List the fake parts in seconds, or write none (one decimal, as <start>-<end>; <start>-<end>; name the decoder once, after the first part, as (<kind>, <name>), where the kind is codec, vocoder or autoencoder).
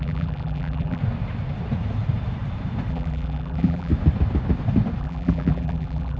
0.0-1.0 (vocoder, BigVGAN v2); 2.9-3.9; 5.0-6.2